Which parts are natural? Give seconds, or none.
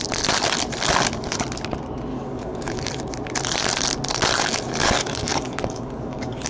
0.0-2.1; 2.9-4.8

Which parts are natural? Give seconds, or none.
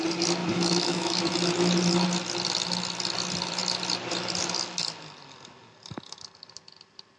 0.0-0.4; 1.2-7.2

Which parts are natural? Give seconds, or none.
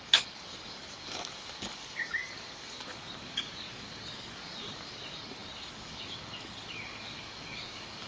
none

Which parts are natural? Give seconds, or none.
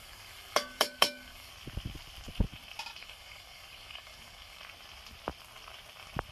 1.5-3.0; 4.6-6.3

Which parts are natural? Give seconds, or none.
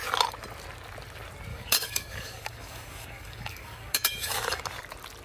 0.0-1.5; 4.6-5.2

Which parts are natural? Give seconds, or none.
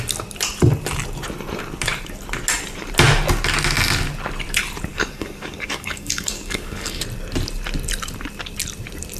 0.0-4.9; 7.0-9.2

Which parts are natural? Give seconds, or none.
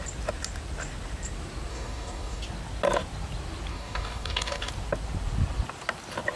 0.0-1.7; 2.4-3.7; 4.7-6.4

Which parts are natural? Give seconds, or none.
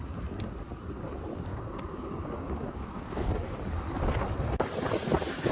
0.0-1.5; 3.3-5.5